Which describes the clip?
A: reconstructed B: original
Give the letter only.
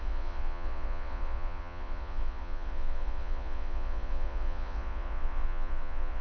A